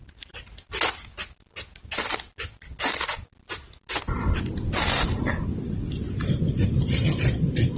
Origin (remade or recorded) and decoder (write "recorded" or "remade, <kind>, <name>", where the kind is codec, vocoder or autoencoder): recorded